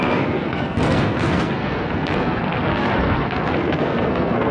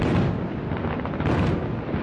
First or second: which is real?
second